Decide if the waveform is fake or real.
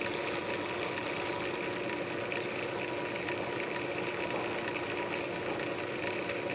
real